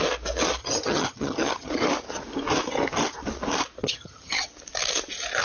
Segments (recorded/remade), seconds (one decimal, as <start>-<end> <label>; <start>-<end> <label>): 0.0-0.6 recorded; 0.6-1.7 remade; 1.7-3.8 recorded; 3.8-4.5 remade; 4.5-5.4 recorded